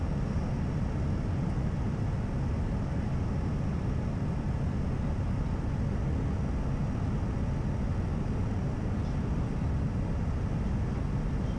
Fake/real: real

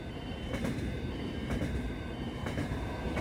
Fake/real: fake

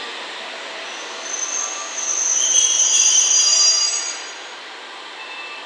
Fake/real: real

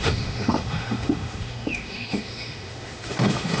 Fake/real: fake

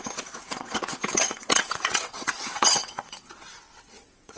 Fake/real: fake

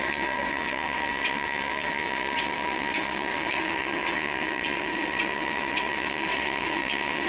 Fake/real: fake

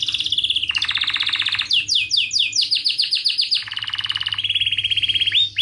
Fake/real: real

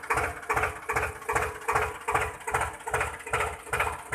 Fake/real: real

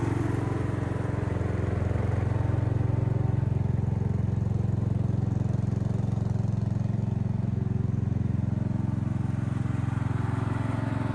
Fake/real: real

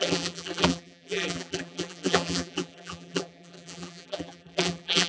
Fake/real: fake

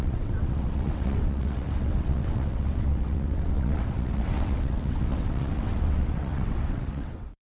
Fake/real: fake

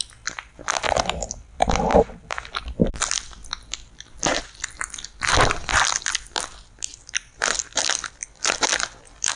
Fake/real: real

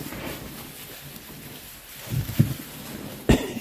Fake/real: real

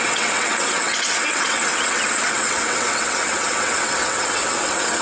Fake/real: fake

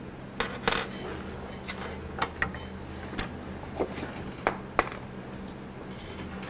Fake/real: real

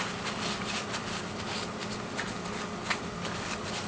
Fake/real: real